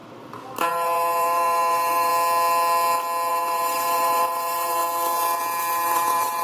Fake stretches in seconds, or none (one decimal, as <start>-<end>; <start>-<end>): 0.7-2.1; 3.3-4.8; 5.7-6.4